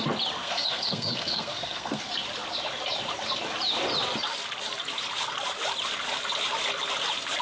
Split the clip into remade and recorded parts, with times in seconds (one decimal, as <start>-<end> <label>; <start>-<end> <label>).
0.0-0.4 recorded; 0.4-2.0 remade; 2.0-7.4 recorded